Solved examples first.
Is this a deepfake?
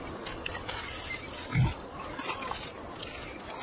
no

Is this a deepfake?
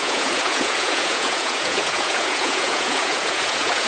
yes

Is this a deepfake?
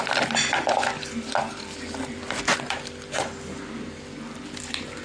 yes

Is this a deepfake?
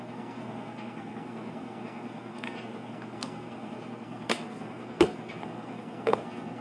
yes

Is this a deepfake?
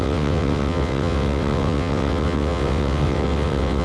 yes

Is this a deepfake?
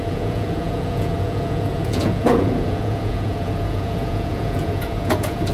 yes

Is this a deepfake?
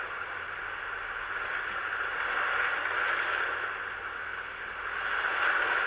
no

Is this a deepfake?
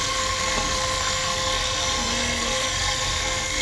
yes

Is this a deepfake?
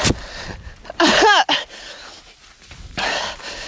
no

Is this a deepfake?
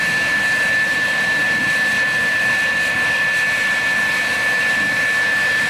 no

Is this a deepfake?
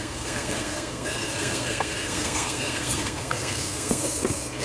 yes